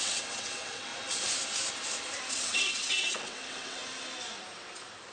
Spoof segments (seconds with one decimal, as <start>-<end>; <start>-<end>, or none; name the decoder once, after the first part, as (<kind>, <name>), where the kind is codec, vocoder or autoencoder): 0.0-0.9 (vocoder, WaveNeXt); 2.3-3.8